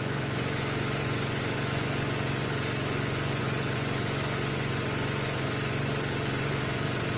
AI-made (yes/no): yes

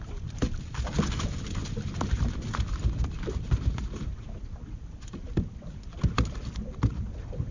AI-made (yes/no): no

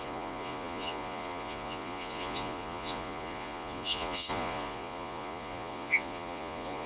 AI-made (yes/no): yes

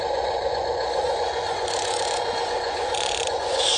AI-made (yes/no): yes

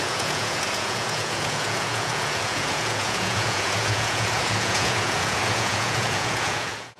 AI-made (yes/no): yes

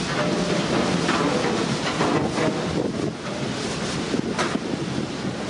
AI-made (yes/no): no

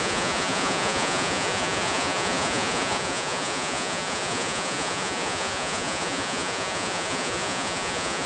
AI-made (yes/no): yes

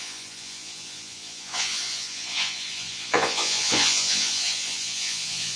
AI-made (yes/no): yes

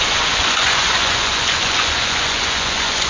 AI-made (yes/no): yes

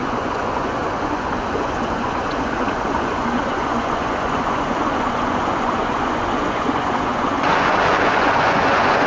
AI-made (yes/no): yes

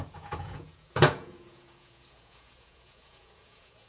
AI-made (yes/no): yes